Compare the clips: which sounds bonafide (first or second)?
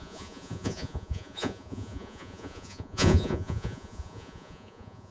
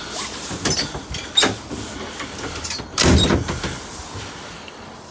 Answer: second